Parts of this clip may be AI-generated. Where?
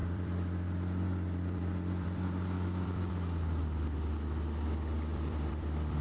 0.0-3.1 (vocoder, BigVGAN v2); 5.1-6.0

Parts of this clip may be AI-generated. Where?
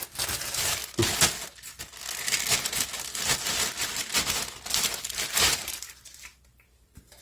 0.0-0.8 (vocoder, BigVGAN v2); 5.1-7.2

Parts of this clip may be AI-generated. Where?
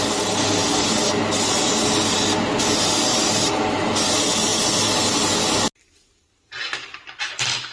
none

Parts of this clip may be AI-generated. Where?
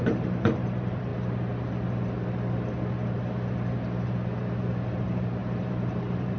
0.0-1.1 (vocoder, BigVGAN v2); 4.9-6.4